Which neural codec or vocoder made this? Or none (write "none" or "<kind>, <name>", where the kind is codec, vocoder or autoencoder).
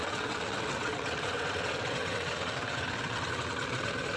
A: vocoder, WaveNeXt